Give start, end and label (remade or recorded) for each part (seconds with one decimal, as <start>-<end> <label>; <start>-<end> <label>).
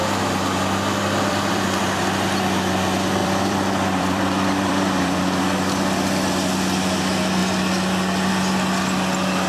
0.0-1.8 remade; 1.8-3.2 recorded; 3.2-5.4 remade; 5.4-9.5 recorded